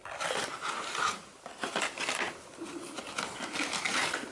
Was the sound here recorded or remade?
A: recorded